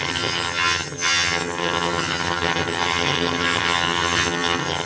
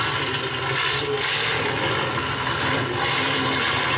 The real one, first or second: second